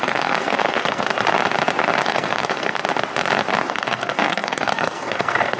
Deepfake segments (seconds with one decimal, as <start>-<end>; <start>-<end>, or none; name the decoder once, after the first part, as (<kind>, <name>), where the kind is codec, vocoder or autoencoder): 0.0-1.1 (codec, SNAC); 2.0-2.8; 3.7-5.6